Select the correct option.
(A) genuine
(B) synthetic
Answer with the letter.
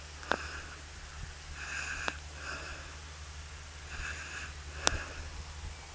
A